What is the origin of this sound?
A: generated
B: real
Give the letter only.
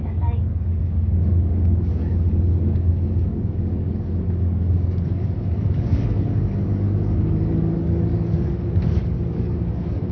A